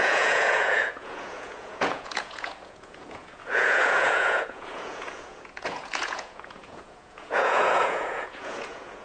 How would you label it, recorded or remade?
remade